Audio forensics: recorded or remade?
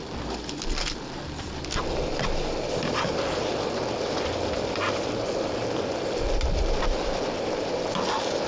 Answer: recorded